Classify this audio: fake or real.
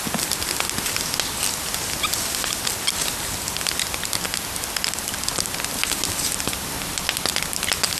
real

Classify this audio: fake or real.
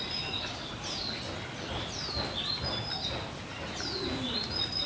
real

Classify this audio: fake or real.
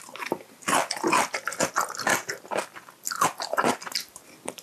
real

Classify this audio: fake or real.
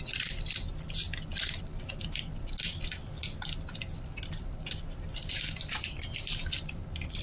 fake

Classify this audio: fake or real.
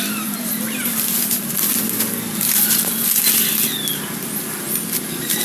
real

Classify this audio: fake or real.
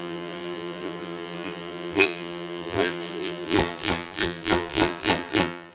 fake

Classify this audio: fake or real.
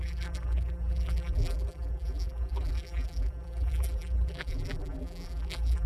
fake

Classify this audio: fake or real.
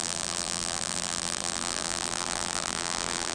fake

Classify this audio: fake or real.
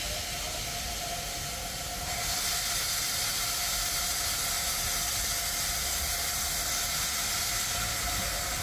real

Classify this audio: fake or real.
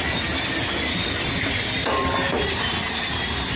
real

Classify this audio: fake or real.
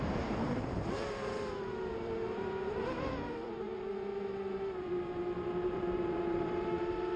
fake